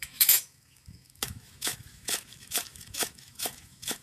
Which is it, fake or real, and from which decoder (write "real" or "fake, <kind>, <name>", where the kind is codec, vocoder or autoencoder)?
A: fake, autoencoder, DAC-VAE